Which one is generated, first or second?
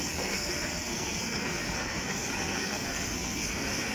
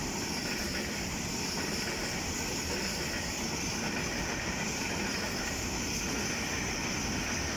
first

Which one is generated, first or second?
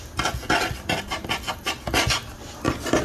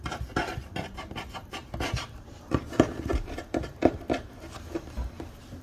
second